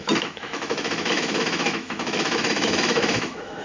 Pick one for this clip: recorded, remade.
remade